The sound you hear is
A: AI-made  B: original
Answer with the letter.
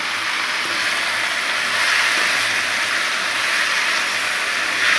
B